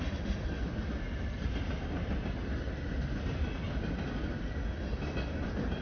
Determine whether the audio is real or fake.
real